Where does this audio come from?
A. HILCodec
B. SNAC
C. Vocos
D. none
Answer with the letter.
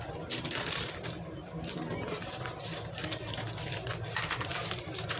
D